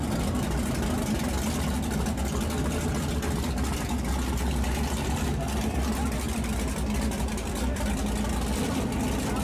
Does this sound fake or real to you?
real